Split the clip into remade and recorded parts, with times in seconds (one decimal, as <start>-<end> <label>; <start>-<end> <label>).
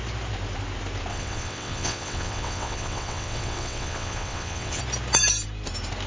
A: 0.0-1.1 recorded; 1.1-4.8 remade; 4.8-6.1 recorded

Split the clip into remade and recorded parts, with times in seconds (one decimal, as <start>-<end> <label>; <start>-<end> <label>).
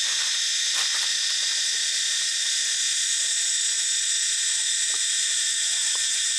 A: 0.0-6.4 recorded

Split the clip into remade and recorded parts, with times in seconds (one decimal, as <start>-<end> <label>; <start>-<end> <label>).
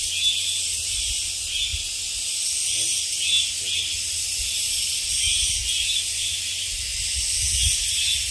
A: 0.0-8.3 recorded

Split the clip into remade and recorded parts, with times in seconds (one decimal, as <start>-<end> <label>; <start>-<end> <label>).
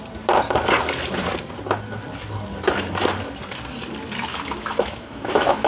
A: 0.0-4.3 recorded; 4.3-5.7 remade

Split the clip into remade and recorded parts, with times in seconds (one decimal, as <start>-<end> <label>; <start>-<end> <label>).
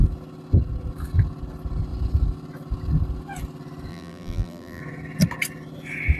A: 0.0-3.9 recorded; 3.9-4.8 remade; 4.8-6.2 recorded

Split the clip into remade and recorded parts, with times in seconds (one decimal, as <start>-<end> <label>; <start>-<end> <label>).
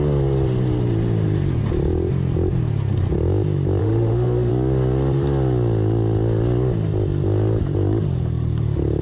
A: 0.0-3.8 recorded; 3.8-4.5 remade; 4.5-9.0 recorded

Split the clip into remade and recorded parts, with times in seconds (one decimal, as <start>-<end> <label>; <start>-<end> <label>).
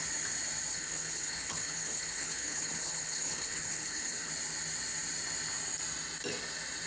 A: 0.0-0.7 recorded; 0.7-4.3 remade; 4.3-6.9 recorded